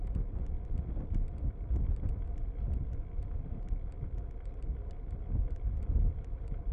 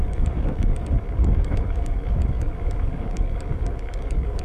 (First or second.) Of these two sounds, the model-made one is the second